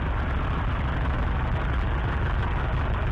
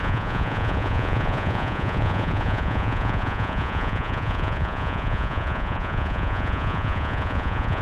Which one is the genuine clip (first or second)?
first